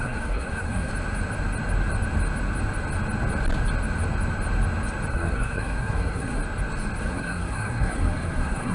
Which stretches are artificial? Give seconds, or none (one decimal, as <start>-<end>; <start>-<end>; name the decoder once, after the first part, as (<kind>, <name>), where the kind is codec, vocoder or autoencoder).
0.0-0.9 (codec, SNAC); 5.1-6.4; 7.0-8.7